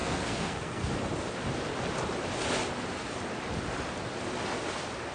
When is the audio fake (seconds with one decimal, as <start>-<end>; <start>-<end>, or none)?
0.0-0.9